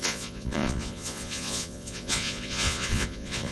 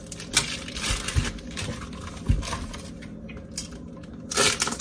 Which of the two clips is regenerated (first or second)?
first